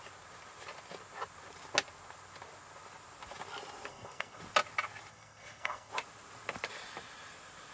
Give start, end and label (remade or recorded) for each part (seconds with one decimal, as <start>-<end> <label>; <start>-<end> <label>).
0.0-3.9 recorded; 3.9-4.4 remade; 4.4-5.1 recorded; 5.1-5.9 remade; 5.9-7.7 recorded